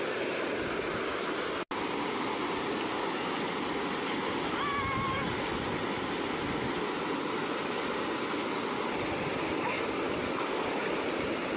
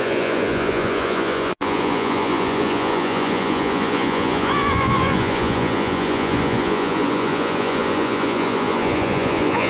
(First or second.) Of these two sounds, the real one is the first